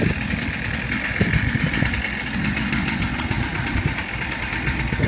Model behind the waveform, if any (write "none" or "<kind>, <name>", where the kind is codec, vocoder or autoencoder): vocoder, BigVGAN v2